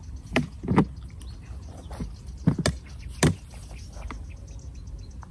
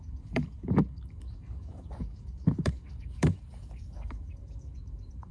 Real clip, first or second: first